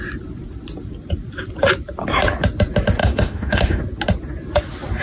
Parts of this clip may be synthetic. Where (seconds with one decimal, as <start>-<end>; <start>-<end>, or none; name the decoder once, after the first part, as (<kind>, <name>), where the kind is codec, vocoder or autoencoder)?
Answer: 3.0-3.8 (autoencoder, DAC-VAE)